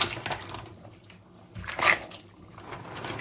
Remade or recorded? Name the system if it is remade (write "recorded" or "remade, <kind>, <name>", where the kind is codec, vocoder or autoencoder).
recorded